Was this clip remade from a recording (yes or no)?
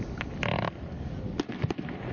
no